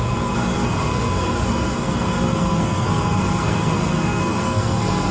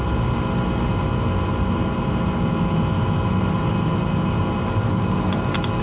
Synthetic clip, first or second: first